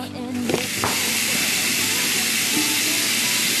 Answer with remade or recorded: recorded